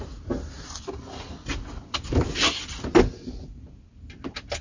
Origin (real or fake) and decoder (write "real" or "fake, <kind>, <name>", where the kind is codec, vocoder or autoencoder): real